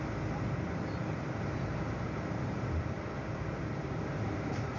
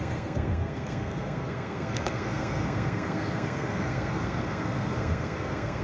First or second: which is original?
first